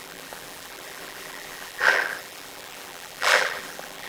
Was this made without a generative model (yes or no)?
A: no